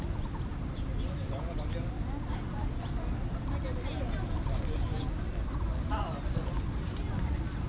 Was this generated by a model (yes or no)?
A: no